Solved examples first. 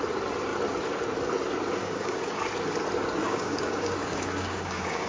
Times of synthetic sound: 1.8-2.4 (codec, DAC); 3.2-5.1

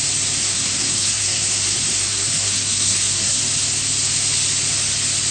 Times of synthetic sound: 0.4-3.4 (codec, SNAC)

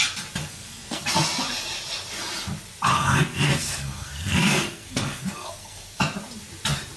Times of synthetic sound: 0.4-1.1 (codec, SNAC); 2.9-6.0

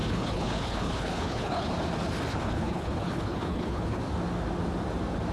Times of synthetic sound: 0.0-1.7 (codec, HILCodec); 2.3-4.0

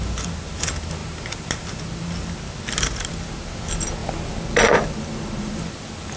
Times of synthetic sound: 1.0-1.8 (vocoder, BigVGAN v2)

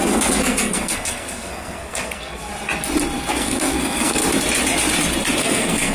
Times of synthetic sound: 0.0-2.5 (codec, SNAC); 3.3-4.2; 5.4-5.9

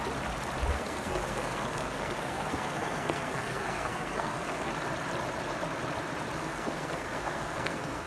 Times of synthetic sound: 0.7-4.7 (codec, SNAC); 6.4-8.1

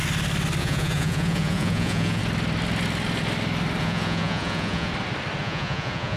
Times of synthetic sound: 0.6-2.2 (vocoder, Vocos); 3.8-4.9; 5.4-6.2